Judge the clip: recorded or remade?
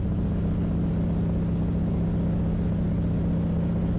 recorded